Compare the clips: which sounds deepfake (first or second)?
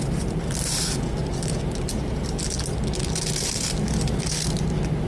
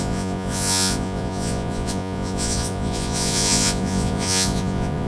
second